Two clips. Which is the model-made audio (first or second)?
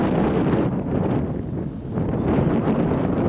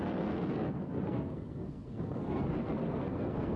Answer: second